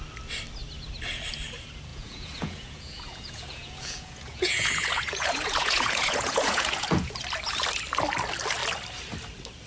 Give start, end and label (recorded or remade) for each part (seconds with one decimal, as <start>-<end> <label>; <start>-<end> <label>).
0.0-1.9 recorded; 1.9-7.1 remade; 7.1-9.7 recorded